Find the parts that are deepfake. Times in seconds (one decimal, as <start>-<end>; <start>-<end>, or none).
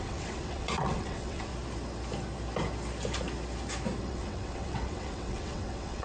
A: 0.0-1.5; 4.0-6.0